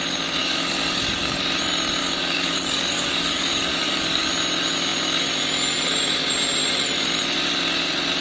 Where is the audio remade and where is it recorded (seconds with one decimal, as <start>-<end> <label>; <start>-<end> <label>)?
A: 0.0-0.4 recorded; 0.4-1.4 remade; 1.4-2.0 recorded; 2.0-4.3 remade; 4.3-8.2 recorded